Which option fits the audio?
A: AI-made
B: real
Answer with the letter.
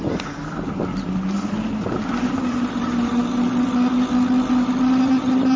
B